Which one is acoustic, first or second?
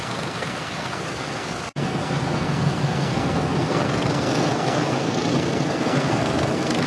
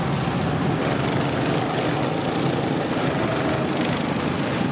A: second